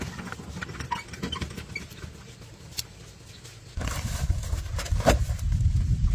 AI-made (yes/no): no